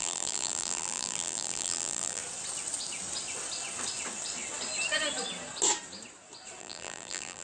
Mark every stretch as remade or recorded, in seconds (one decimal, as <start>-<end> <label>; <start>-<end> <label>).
0.0-2.2 remade; 2.2-6.6 recorded; 6.6-7.4 remade